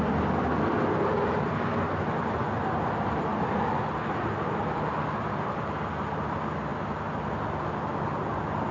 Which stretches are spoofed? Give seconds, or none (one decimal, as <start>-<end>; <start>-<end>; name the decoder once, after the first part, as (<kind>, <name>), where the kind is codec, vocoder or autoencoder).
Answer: none

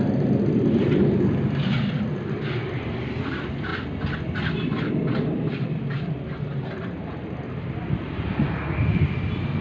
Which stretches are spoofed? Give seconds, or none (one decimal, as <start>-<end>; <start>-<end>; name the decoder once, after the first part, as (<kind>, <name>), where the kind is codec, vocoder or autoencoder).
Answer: none